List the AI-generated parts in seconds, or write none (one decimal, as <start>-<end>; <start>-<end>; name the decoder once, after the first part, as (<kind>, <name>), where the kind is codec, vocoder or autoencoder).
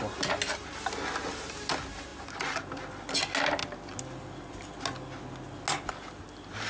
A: none